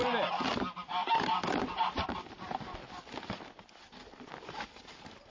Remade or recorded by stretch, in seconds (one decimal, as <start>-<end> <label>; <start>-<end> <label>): 0.0-5.3 recorded